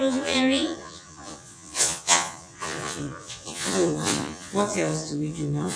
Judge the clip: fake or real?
fake